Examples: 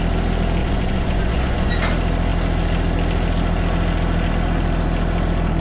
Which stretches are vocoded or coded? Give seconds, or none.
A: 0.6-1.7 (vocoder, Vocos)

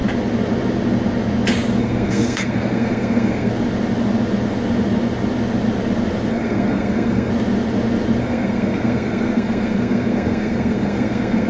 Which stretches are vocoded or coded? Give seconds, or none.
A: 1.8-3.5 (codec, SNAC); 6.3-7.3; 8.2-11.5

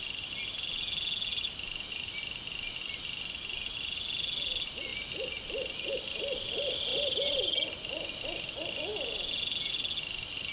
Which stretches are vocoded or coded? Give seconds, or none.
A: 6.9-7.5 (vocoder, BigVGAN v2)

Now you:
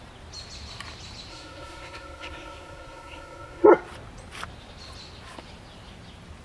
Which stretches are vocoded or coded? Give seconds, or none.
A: 1.3-3.7 (codec, SNAC)

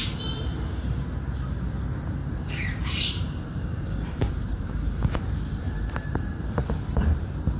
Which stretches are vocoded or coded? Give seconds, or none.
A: 0.5-1.1 (vocoder, BigVGAN v2); 2.2-6.6